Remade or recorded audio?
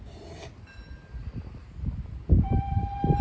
recorded